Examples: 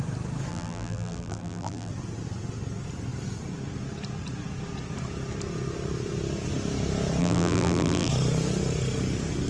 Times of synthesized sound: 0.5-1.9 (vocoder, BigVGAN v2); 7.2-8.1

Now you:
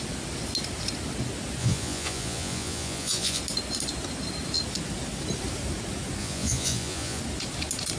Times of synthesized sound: 1.6-3.4 (vocoder, Vocos); 6.2-7.2

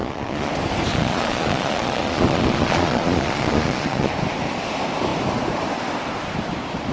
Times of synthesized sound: 0.0-0.5 (vocoder, Vocos); 0.9-4.1

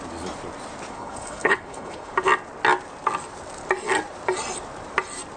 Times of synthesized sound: 0.9-2.1 (codec, HILCodec)

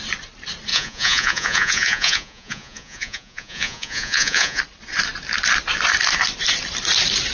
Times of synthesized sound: 0.7-4.6 (vocoder, Vocos)

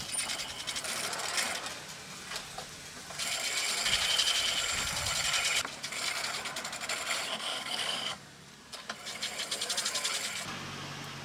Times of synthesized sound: 7.5-8.5 (codec, DAC)